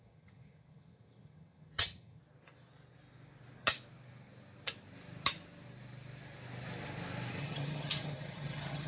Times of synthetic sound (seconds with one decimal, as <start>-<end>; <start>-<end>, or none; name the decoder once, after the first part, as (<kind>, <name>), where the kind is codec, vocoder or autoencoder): 0.0-2.2 (vocoder, HiFi-GAN); 7.4-8.9